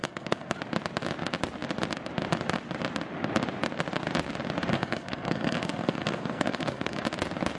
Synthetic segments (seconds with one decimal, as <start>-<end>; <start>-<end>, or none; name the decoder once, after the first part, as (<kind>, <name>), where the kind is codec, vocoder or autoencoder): 0.0-0.5 (codec, SNAC); 4.7-7.0